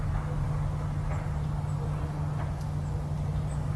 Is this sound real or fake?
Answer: real